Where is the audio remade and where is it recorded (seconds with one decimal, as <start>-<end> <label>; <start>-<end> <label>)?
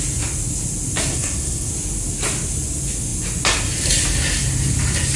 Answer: 0.0-1.1 recorded; 1.1-1.7 remade; 1.7-5.2 recorded